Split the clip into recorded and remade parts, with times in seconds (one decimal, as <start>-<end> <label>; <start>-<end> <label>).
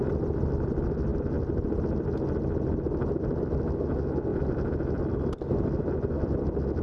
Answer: 0.0-4.3 recorded; 4.3-5.0 remade; 5.0-6.8 recorded